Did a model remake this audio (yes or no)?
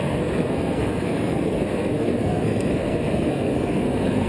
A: yes